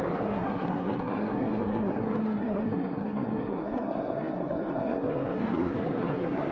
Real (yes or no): no